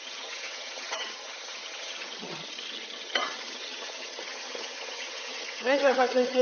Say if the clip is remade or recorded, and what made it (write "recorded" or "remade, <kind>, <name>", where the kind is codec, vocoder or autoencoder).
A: remade, vocoder, HiFi-GAN